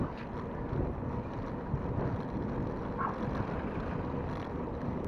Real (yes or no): yes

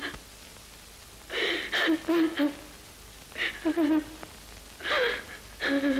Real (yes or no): yes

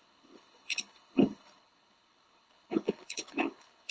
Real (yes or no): no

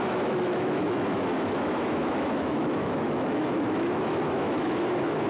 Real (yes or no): no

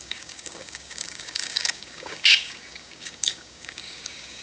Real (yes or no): no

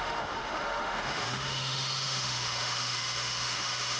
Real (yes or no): no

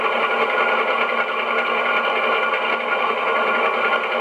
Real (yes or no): yes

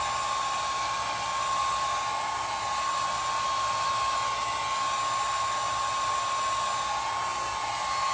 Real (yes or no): yes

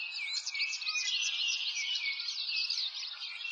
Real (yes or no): no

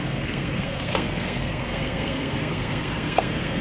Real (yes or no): no